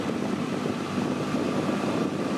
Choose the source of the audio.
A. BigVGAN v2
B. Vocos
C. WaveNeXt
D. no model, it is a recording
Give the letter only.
A